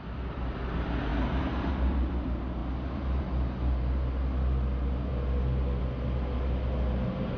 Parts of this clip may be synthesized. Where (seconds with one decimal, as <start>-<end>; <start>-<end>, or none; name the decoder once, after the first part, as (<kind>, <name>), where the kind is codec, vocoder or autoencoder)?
1.1-1.7 (vocoder, BigVGAN v2)